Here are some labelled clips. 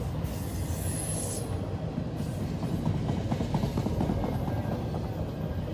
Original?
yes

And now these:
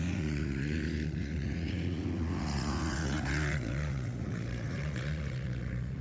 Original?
no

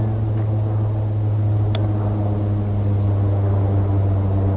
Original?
yes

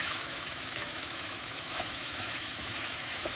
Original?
no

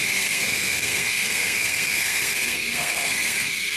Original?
no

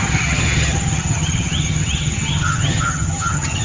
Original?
no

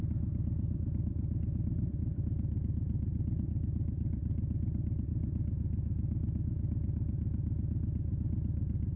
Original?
yes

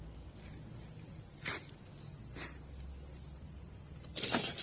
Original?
yes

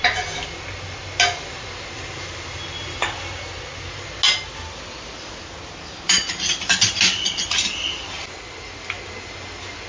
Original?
yes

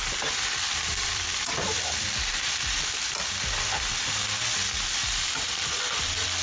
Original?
no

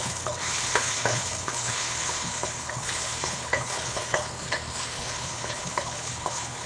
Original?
no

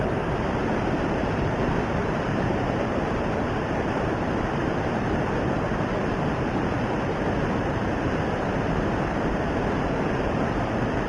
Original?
no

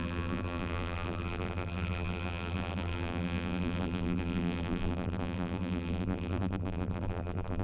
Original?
no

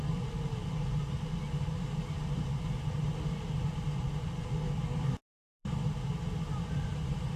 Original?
yes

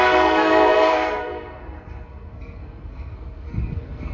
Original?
no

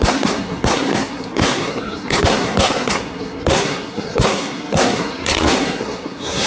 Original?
no